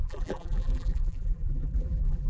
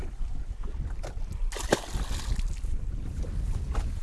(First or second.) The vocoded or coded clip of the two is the first